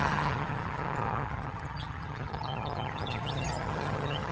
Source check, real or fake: fake